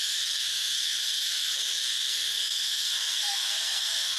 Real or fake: fake